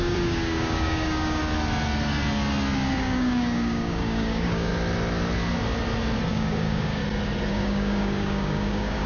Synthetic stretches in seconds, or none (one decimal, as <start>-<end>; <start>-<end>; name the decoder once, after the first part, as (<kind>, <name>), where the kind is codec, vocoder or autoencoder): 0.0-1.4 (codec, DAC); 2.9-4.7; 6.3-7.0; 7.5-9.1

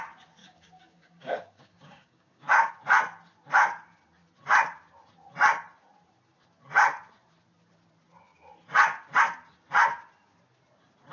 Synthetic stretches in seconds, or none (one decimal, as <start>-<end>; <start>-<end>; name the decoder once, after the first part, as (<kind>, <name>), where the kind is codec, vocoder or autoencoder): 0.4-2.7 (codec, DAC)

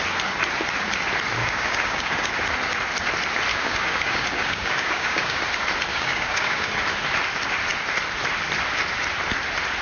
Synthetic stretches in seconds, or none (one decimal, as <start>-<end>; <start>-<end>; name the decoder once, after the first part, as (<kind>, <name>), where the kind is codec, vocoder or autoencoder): 1.4-2.3 (codec, DAC); 3.5-5.4; 5.9-6.7

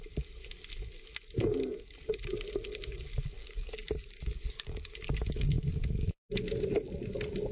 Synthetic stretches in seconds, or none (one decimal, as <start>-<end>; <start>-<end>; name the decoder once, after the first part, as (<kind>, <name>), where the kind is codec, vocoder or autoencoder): 3.4-6.3 (codec, DAC)

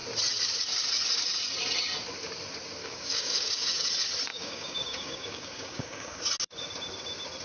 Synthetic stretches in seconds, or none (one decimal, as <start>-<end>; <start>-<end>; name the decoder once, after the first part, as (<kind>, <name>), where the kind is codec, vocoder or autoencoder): 2.8-3.9 (codec, DAC); 4.3-6.2

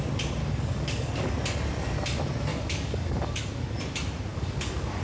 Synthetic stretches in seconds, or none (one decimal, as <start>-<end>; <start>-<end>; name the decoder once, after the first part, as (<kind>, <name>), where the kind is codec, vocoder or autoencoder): 0.4-1.3 (codec, DAC); 2.5-3.8; 4.3-5.0